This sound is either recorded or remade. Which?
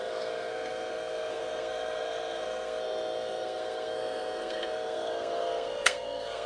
remade